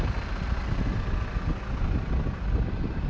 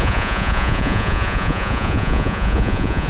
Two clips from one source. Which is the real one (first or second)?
first